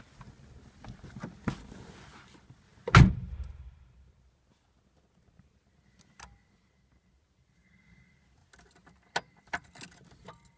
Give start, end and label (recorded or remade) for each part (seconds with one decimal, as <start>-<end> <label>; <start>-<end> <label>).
0.0-10.6 recorded